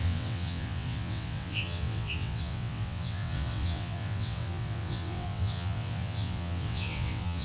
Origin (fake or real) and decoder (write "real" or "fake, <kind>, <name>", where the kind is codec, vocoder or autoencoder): fake, vocoder, WaveNeXt